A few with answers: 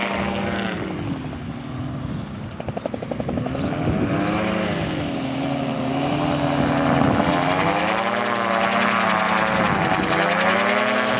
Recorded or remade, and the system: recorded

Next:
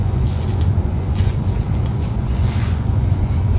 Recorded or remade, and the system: remade, vocoder, Vocos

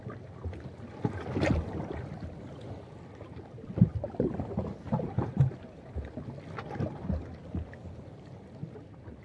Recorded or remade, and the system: recorded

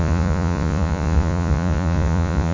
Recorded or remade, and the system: remade, vocoder, Vocos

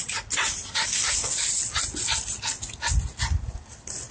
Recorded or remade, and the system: recorded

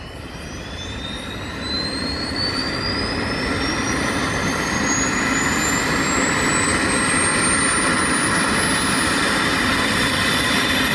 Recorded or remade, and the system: recorded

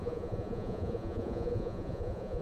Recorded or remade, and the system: remade, vocoder, Vocos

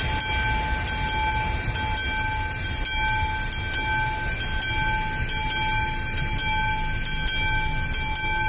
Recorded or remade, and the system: recorded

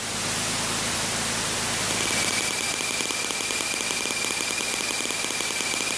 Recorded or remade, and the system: recorded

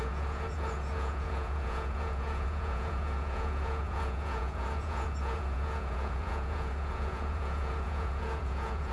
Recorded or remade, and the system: remade, vocoder, Vocos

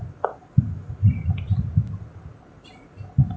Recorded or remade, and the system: recorded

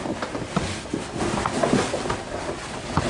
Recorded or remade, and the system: recorded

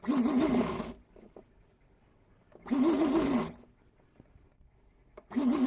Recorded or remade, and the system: recorded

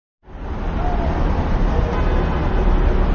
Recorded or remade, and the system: recorded